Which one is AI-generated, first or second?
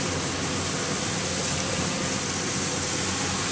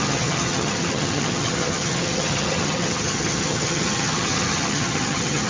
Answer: second